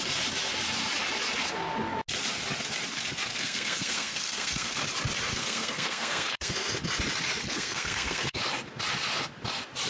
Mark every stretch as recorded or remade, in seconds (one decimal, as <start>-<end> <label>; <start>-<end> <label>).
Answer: 0.0-3.3 recorded; 3.3-4.8 remade; 4.8-5.4 recorded; 5.4-6.5 remade; 6.5-7.4 recorded; 7.4-8.4 remade; 8.4-9.9 recorded